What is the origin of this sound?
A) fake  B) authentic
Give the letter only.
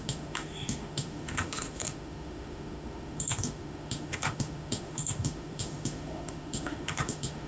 A